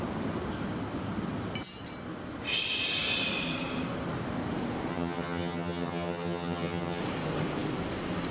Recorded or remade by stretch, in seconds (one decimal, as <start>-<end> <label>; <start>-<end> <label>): 0.0-4.9 recorded; 4.9-7.0 remade; 7.0-8.3 recorded